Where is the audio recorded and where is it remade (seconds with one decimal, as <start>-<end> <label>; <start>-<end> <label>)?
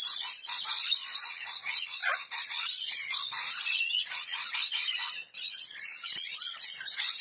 0.0-7.2 remade